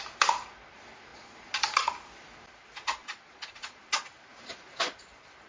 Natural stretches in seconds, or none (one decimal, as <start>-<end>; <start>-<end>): 0.0-1.1; 1.9-3.0; 3.8-5.5